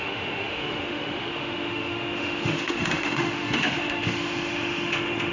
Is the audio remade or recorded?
remade